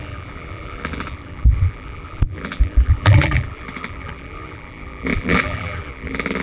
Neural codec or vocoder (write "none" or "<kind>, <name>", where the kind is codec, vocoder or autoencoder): vocoder, BigVGAN v2